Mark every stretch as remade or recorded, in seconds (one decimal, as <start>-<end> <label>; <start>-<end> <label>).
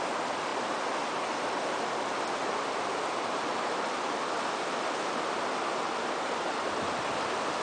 0.0-7.6 recorded